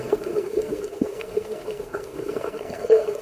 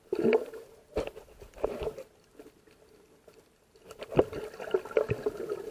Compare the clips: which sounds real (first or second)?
second